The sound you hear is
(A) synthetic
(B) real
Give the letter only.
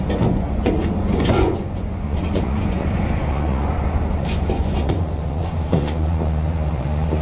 A